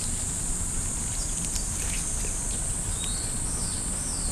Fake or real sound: real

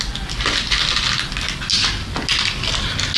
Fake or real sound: real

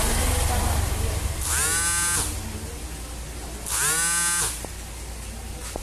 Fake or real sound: real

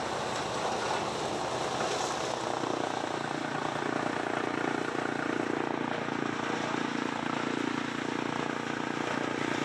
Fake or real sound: real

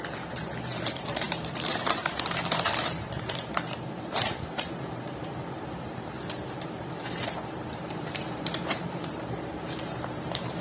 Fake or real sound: fake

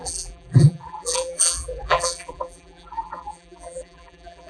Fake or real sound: fake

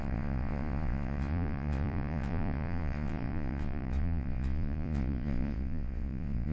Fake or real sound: fake